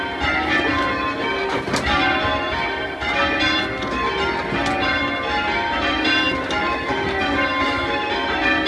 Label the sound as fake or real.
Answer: real